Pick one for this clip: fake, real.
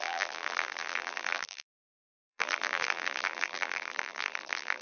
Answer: fake